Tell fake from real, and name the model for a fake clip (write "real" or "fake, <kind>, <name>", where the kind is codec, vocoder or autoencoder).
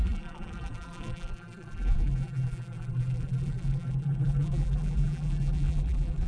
fake, vocoder, BigVGAN v2